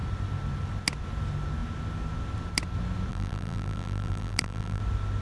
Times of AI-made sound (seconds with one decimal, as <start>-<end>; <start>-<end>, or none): 3.1-4.8